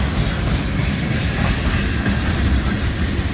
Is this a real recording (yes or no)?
yes